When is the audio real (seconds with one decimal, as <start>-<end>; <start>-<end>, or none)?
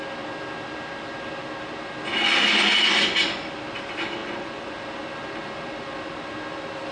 0.0-4.2; 4.8-6.9